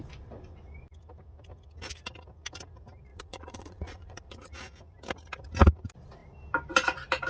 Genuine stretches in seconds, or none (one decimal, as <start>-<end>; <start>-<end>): 0.0-3.1; 4.5-7.3